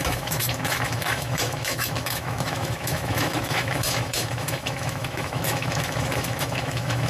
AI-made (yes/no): yes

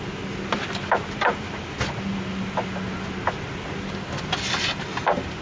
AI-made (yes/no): no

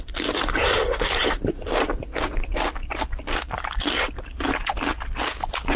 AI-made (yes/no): no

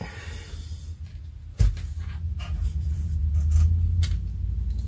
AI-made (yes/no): no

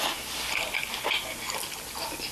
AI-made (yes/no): no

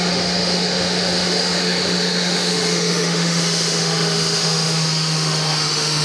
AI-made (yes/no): yes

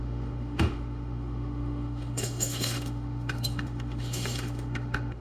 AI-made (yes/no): yes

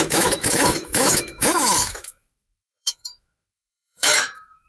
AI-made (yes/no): yes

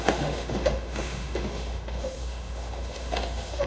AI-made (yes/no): yes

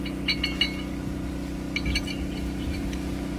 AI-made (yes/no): no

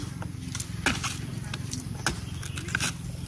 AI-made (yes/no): no